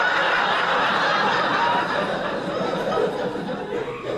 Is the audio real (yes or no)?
yes